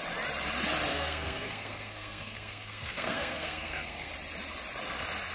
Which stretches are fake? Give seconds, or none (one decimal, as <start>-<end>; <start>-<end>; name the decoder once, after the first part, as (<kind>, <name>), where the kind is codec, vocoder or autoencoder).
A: 0.9-4.1 (codec, SNAC)